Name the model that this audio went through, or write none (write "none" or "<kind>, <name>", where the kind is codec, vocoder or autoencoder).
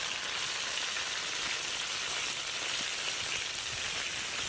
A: none